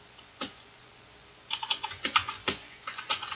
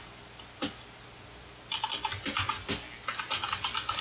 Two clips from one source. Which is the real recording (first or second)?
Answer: second